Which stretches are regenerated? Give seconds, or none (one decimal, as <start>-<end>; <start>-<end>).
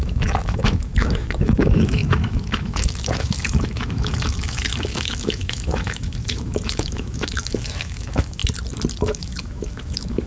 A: 0.0-8.4; 9.0-10.3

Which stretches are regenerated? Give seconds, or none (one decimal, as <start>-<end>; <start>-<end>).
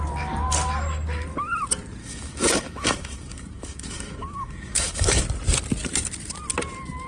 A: 2.0-5.2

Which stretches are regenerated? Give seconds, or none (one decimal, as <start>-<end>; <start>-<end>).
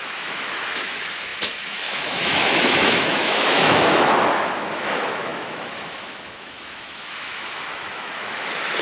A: 0.0-8.8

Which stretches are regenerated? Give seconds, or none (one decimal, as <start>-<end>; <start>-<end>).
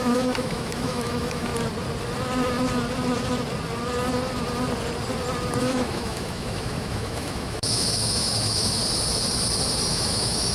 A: 0.0-1.5; 5.6-8.8; 9.9-10.5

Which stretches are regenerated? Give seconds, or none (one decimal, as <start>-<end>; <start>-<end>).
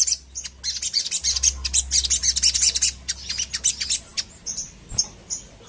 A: none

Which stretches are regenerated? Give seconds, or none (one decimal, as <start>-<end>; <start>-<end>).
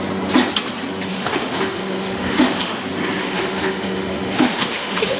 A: 1.1-2.8; 3.2-5.2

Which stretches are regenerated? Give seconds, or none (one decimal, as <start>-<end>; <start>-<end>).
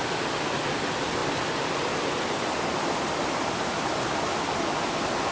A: none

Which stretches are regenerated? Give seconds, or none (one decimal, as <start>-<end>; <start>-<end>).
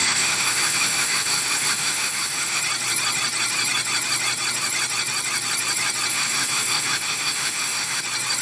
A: 0.0-2.6; 6.1-8.0